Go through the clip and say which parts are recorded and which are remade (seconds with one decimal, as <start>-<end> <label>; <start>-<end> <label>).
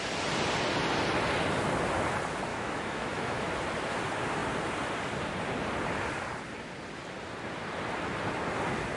0.0-2.5 recorded; 2.5-3.5 remade; 3.5-9.0 recorded